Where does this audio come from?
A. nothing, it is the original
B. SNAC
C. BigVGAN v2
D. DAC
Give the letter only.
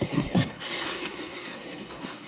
B